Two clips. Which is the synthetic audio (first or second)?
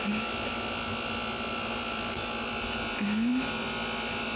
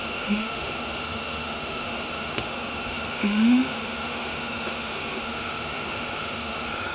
second